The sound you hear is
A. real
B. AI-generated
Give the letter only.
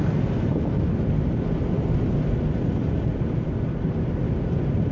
A